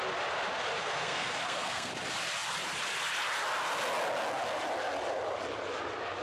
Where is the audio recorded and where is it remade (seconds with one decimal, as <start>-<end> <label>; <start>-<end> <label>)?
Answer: 0.0-0.8 recorded; 0.8-1.9 remade; 1.9-6.2 recorded